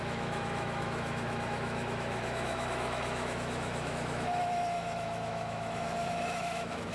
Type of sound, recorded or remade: remade